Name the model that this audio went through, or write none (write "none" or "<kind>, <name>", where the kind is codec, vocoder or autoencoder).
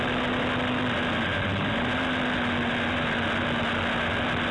none